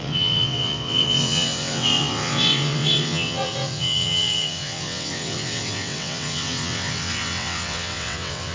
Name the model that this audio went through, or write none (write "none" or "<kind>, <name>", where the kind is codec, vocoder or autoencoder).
vocoder, WaveNeXt